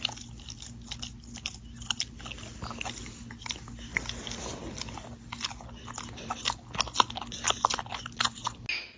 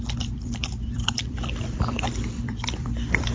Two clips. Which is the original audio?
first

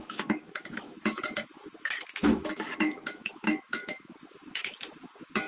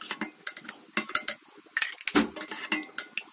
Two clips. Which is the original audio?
second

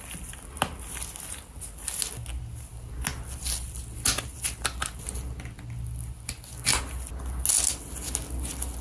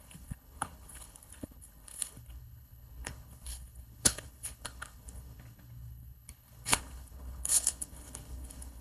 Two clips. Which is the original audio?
first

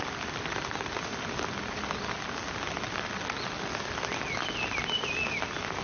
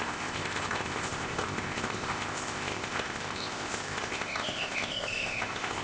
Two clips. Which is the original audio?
first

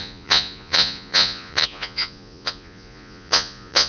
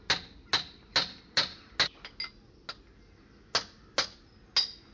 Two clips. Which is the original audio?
second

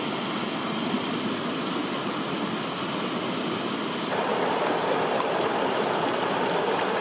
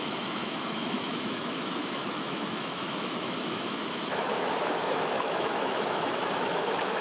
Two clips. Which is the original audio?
first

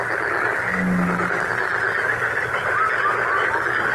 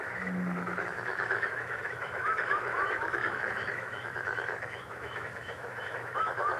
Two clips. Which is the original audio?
first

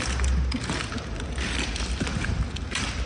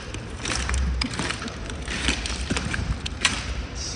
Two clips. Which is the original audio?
first